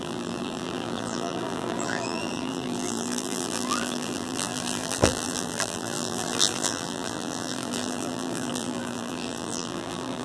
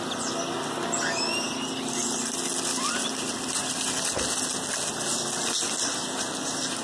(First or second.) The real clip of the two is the second